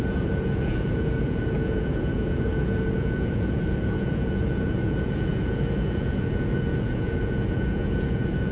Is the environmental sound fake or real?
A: fake